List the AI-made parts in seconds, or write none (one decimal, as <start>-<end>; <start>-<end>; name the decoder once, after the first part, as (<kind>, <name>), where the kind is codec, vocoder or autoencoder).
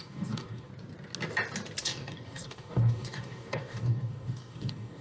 0.0-0.7 (codec, DAC); 1.8-5.0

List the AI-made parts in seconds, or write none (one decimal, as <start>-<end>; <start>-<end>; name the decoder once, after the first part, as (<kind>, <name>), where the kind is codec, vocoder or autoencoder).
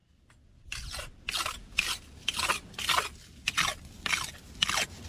none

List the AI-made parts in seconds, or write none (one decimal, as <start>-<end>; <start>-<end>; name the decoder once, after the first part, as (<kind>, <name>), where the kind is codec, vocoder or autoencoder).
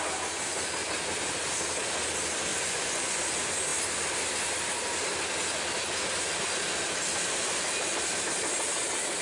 2.5-3.2 (vocoder, Vocos)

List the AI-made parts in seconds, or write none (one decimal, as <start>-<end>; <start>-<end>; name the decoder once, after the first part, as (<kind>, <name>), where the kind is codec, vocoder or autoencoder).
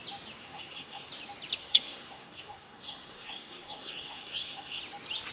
0.4-1.1 (codec, SNAC); 1.6-4.8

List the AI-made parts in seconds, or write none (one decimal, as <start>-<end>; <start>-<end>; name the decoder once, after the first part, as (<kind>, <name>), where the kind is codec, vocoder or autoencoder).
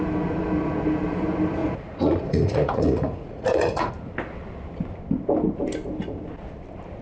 1.6-3.9 (vocoder, Vocos)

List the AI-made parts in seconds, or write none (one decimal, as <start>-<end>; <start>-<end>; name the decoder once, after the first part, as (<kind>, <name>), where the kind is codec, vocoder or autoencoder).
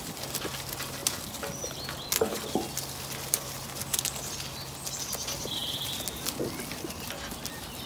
none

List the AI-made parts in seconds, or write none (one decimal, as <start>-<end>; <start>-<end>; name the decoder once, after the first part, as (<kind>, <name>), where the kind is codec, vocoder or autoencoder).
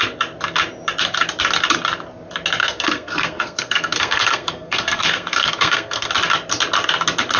2.6-6.1 (codec, SNAC)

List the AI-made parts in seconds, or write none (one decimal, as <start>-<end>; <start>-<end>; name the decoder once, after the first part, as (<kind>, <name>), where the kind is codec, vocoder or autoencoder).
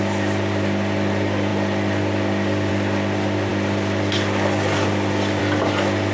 none